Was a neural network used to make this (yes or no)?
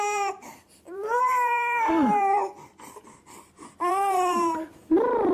yes